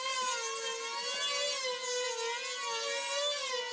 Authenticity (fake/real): real